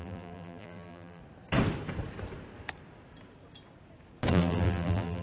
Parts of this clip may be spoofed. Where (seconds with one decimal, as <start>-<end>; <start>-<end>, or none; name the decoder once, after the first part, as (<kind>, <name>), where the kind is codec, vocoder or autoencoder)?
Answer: 0.0-1.2 (vocoder, BigVGAN v2); 4.3-5.2